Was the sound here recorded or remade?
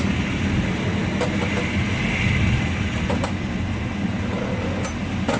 recorded